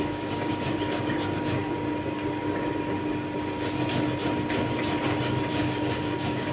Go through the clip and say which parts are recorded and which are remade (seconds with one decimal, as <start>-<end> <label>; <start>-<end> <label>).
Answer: 0.0-1.6 remade; 1.6-5.3 recorded; 5.3-6.5 remade